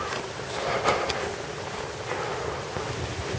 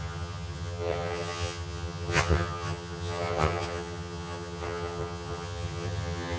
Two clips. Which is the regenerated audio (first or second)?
second